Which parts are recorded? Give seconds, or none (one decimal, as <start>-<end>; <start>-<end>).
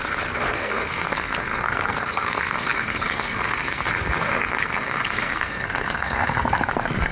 none